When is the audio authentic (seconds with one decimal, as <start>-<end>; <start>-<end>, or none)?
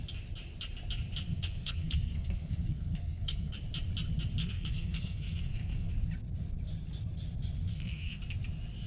0.0-1.3; 3.6-4.4; 5.9-7.7; 8.2-8.9